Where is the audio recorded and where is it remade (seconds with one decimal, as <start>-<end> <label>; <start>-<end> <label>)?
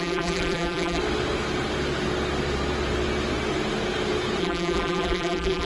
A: 0.0-1.0 remade; 1.0-4.4 recorded; 4.4-5.6 remade